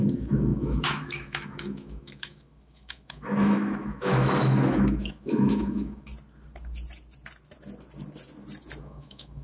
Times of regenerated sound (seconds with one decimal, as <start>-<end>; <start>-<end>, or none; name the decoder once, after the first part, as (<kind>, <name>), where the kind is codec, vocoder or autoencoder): 0.0-6.1 (autoencoder, DAC-VAE); 8.8-9.4